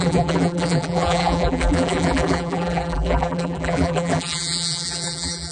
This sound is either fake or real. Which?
fake